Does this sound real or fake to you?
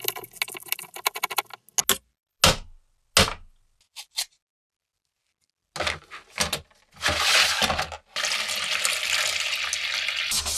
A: real